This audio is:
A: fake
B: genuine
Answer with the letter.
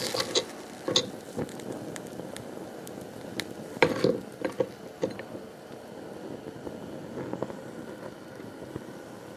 B